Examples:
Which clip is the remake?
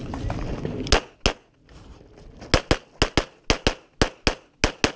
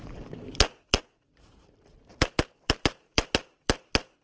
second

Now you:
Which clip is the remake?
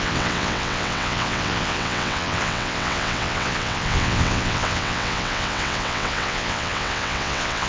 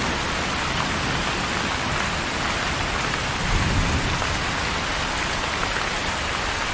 first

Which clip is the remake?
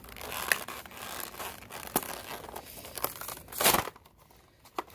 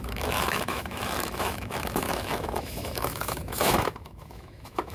second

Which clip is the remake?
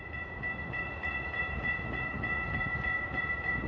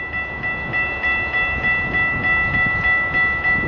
first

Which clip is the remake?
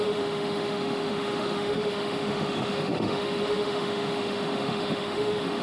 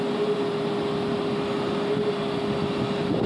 first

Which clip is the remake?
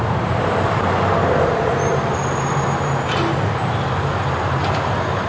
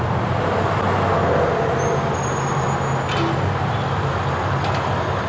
first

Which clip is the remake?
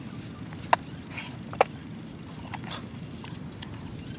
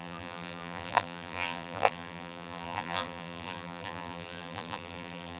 second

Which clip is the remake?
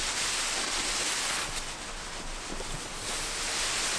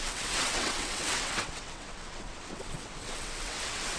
second